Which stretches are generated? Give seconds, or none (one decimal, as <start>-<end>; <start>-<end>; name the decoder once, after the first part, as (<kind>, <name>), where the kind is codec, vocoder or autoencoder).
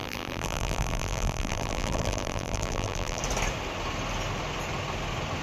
0.0-3.2 (vocoder, BigVGAN v2)